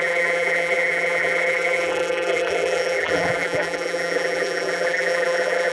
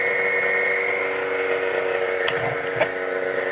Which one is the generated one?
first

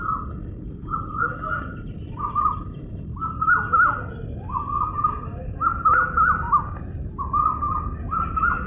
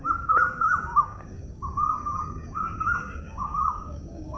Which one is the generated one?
second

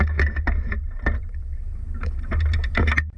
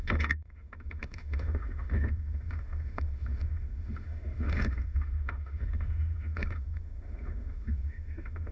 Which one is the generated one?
second